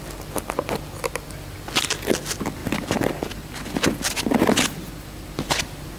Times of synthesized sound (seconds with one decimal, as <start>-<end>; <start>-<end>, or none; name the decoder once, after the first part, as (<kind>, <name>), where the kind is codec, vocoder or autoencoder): 2.6-3.9 (vocoder, BigVGAN v2)